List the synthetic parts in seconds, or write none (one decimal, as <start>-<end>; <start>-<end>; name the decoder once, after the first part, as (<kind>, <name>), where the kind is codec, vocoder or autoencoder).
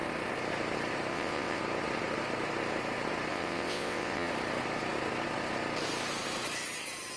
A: 1.1-1.6 (vocoder, WaveNeXt); 3.3-4.3